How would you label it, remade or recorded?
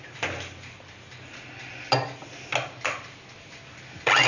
recorded